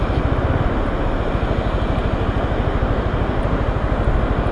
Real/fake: real